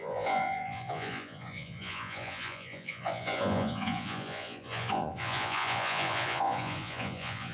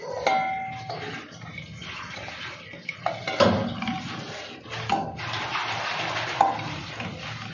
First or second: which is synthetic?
first